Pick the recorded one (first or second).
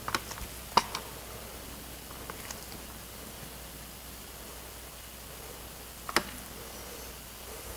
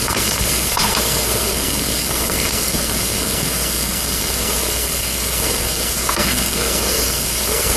first